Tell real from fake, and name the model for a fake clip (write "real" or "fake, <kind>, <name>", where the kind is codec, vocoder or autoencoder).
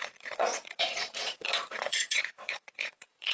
fake, vocoder, Vocos